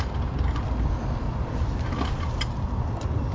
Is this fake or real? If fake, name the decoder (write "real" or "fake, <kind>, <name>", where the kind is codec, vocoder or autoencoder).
real